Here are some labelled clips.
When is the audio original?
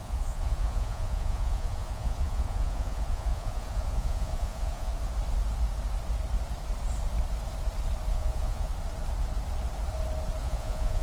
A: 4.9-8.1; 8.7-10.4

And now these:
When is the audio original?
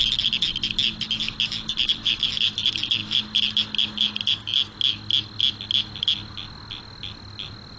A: 0.0-7.8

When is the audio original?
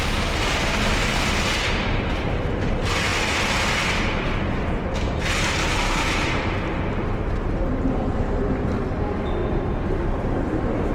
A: 0.0-10.9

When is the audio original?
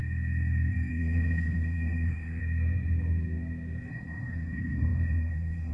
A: 0.0-0.9; 2.4-3.9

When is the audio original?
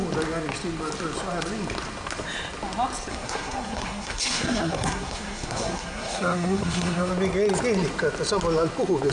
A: 0.0-3.1; 7.1-9.1